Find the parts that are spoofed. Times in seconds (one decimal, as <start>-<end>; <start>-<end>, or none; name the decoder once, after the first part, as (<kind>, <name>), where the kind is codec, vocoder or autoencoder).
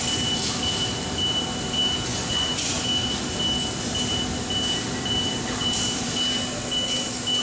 2.1-2.8 (vocoder, Vocos)